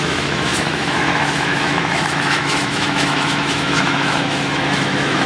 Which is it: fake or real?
fake